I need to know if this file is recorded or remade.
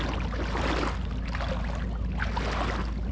recorded